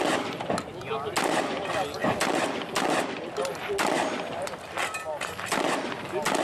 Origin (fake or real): real